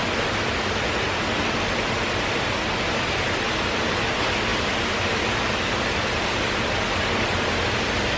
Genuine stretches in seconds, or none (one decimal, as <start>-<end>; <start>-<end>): 0.0-8.2